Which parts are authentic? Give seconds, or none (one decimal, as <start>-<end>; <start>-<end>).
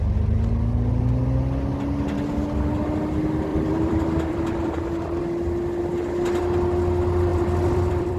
0.0-3.5; 5.2-7.3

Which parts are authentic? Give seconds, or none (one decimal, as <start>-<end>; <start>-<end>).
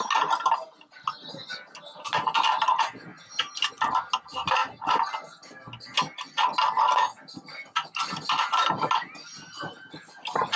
0.0-1.5; 2.7-10.6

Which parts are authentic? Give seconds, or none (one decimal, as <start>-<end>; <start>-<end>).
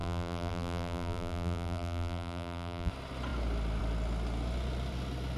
2.9-5.4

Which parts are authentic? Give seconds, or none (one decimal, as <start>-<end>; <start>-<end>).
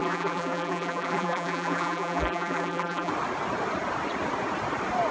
3.1-5.1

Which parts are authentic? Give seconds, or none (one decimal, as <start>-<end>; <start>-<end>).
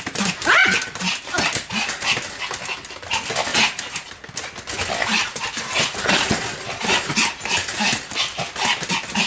0.0-3.5; 4.1-9.3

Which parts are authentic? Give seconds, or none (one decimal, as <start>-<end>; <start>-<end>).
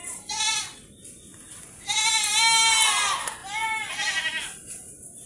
0.6-3.4